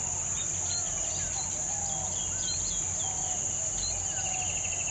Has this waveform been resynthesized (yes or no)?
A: no